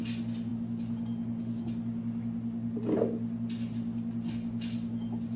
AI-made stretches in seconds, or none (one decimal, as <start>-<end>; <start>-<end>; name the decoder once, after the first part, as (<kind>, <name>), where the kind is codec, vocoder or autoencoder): none